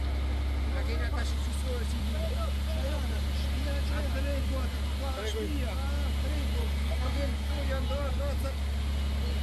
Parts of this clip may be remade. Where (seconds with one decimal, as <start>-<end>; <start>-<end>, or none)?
6.6-7.5